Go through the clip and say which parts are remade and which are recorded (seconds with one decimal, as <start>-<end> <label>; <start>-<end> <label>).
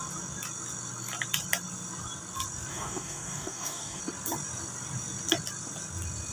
0.0-2.7 recorded; 2.7-4.0 remade; 4.0-6.3 recorded